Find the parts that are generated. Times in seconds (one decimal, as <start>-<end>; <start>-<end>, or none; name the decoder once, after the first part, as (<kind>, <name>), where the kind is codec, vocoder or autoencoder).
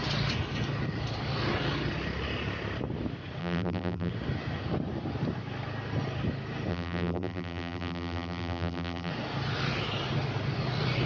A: 3.4-4.1 (vocoder, BigVGAN v2); 6.7-9.1